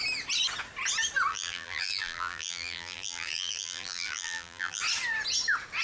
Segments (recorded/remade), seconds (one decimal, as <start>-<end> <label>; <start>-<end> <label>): 0.0-1.3 recorded; 1.3-4.8 remade; 4.8-5.8 recorded